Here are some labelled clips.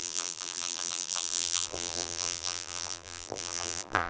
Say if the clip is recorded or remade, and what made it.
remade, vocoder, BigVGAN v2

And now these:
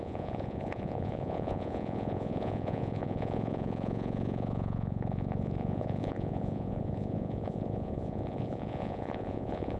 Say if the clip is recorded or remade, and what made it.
remade, vocoder, Vocos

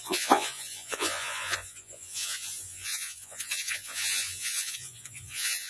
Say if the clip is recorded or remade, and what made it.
remade, vocoder, Vocos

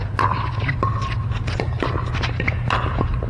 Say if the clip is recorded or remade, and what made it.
recorded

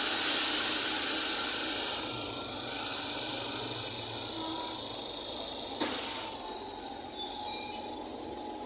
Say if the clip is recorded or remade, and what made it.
recorded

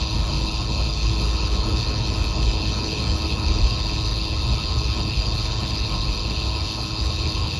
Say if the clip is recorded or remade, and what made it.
remade, codec, HILCodec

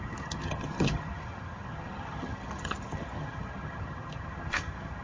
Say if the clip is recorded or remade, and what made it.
remade, vocoder, HiFi-GAN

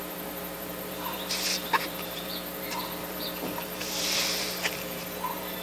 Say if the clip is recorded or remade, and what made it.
remade, vocoder, BigVGAN v2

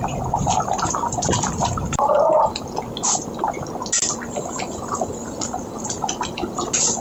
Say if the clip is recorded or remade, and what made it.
recorded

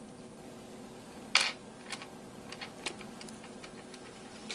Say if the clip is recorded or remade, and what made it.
recorded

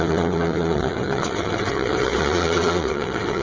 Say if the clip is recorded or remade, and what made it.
remade, vocoder, WaveNeXt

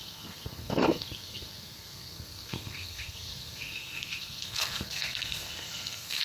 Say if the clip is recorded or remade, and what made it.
remade, codec, SNAC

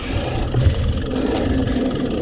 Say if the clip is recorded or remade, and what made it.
recorded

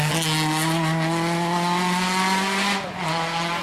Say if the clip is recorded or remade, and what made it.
recorded